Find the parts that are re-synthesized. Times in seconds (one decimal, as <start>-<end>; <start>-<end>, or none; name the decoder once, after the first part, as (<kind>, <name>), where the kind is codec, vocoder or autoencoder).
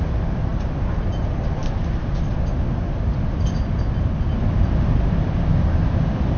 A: none